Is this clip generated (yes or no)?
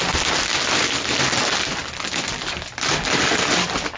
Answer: no